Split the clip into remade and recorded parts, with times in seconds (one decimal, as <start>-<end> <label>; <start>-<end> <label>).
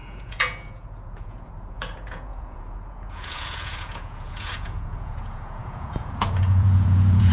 0.0-7.3 remade